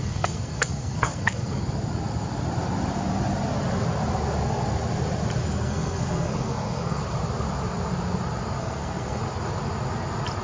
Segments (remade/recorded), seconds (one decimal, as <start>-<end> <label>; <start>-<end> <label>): 0.0-1.6 remade; 1.6-5.4 recorded; 5.4-7.0 remade; 7.0-8.6 recorded; 8.6-9.2 remade; 9.2-10.4 recorded